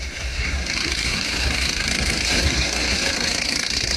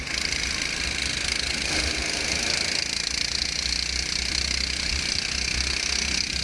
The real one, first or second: second